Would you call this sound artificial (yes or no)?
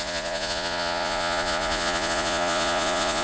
yes